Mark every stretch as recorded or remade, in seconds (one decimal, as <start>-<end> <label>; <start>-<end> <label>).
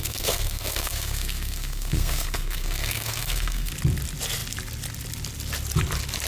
0.0-3.7 remade; 3.7-6.3 recorded